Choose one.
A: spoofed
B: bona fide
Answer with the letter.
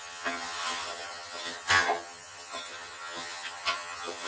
A